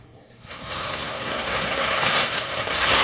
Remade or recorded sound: remade